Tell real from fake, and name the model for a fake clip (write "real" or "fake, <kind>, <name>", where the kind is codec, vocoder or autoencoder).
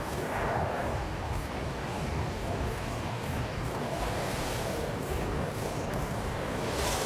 fake, codec, DAC